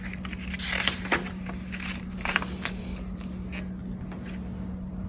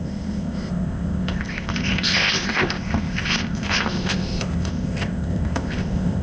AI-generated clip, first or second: second